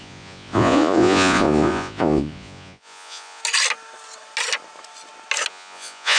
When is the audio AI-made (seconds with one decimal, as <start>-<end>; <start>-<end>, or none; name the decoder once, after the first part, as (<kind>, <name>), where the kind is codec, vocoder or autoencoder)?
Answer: 0.0-3.4 (vocoder, Vocos); 5.5-6.2